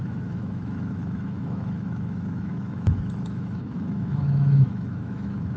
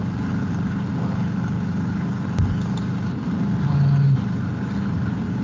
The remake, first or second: first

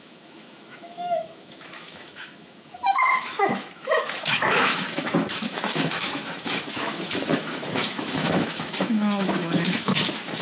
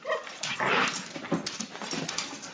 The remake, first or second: first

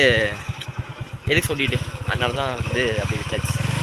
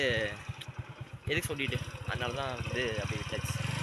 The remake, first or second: first